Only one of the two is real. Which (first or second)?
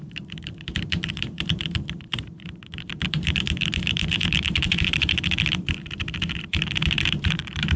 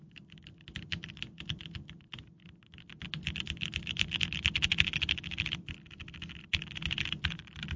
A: second